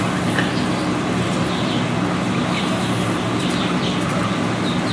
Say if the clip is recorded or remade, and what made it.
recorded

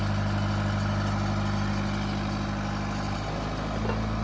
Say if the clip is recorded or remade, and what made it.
recorded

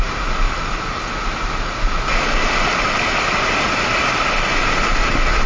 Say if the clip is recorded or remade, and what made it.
recorded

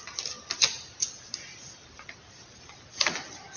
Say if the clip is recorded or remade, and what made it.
recorded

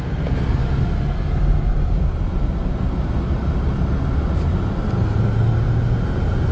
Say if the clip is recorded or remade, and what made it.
recorded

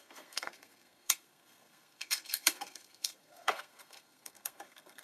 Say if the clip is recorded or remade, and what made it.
remade, codec, SNAC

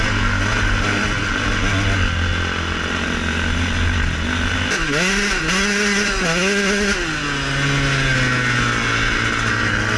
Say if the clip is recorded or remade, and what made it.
recorded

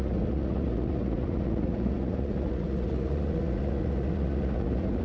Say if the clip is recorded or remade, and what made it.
remade, vocoder, Vocos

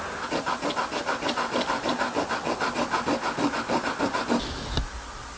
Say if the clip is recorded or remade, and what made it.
recorded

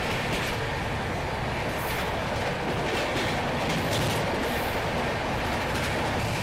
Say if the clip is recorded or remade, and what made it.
recorded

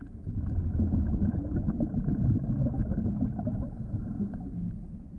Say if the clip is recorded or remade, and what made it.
recorded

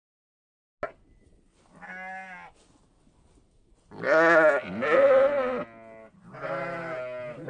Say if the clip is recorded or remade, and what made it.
recorded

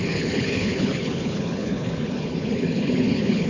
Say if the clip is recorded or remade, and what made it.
remade, codec, HILCodec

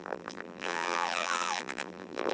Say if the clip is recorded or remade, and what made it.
remade, vocoder, BigVGAN v2